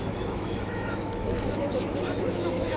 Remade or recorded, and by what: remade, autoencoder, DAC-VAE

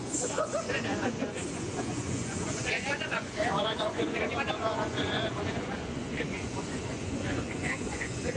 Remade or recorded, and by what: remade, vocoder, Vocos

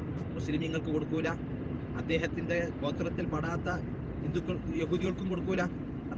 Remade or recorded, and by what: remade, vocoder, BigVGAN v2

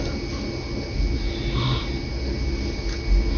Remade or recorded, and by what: recorded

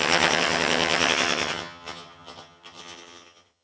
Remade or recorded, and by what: remade, vocoder, HiFi-GAN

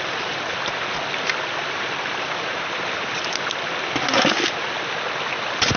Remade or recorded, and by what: recorded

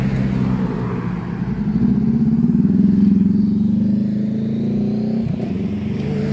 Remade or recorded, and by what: recorded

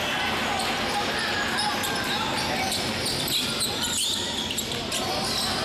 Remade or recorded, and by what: recorded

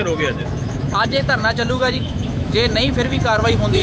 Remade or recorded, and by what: remade, autoencoder, DAC-VAE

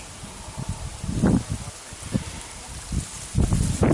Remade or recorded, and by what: recorded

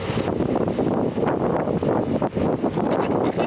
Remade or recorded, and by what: recorded